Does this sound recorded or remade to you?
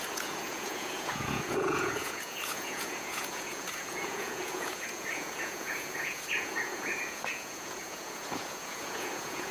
remade